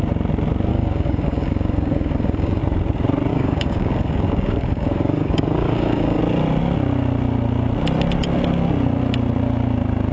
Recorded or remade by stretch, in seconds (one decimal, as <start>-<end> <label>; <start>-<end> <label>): 0.0-0.7 recorded; 0.7-2.6 remade; 2.6-3.3 recorded; 3.3-6.2 remade; 6.2-10.1 recorded